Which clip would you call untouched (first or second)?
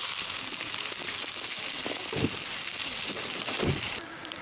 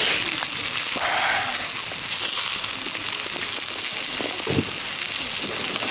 second